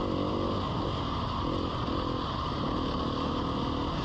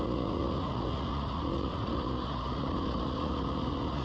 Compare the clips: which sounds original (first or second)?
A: first